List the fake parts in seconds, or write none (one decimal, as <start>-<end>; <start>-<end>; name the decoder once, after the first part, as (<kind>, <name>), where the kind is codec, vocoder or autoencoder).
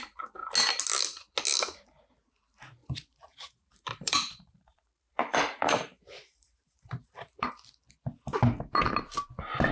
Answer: 2.8-7.5 (vocoder, BigVGAN v2)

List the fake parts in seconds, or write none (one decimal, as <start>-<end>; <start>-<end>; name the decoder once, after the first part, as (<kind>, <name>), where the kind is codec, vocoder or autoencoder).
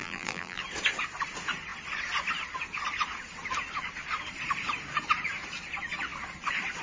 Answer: 0.0-0.6 (vocoder, BigVGAN v2)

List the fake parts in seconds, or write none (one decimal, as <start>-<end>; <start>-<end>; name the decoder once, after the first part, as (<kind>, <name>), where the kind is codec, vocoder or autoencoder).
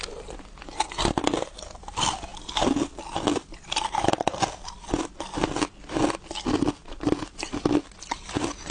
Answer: 2.3-4.4 (vocoder, BigVGAN v2); 6.8-8.1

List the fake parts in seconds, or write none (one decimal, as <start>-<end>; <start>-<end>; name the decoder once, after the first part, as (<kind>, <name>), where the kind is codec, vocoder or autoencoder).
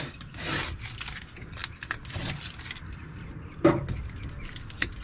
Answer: none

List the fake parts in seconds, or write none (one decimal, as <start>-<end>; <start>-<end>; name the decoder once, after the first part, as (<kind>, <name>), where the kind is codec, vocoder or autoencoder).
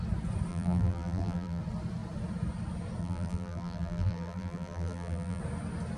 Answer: 0.5-1.6 (vocoder, BigVGAN v2); 3.0-5.4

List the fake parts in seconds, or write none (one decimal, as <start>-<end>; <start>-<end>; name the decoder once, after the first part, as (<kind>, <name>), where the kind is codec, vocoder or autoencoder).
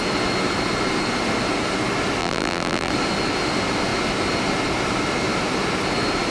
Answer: 2.2-2.9 (vocoder, BigVGAN v2)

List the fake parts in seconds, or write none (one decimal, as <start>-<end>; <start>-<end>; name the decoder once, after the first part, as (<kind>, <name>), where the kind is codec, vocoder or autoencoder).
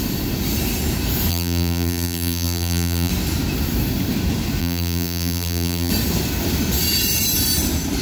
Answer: 1.3-3.1 (vocoder, BigVGAN v2); 4.6-5.9